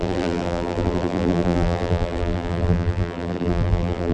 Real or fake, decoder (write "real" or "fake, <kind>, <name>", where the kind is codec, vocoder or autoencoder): fake, vocoder, BigVGAN v2